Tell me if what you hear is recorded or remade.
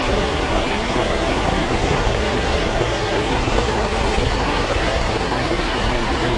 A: remade